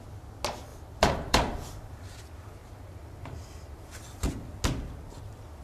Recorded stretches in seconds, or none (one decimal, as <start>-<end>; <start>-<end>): 0.0-0.7; 2.2-2.6; 4.3-5.6